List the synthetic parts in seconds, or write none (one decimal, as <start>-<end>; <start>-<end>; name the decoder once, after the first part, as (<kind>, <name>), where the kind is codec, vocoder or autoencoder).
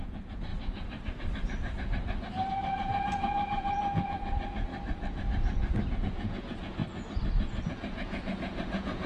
0.0-0.5 (vocoder, Vocos); 2.5-4.7; 6.0-6.8; 7.7-9.1